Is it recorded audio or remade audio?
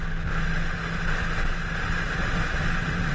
recorded